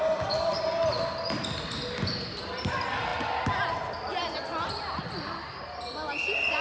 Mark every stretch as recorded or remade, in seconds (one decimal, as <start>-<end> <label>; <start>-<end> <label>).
0.0-6.6 recorded